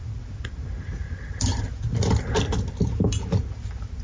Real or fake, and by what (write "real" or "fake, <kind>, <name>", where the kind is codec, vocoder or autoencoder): fake, vocoder, BigVGAN v2